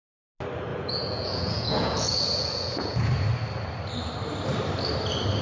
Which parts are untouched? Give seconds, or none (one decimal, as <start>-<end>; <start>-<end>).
0.0-0.7; 3.1-5.4